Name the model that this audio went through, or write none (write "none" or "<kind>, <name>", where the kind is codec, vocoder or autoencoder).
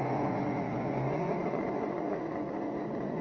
vocoder, Vocos